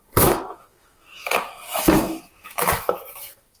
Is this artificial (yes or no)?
yes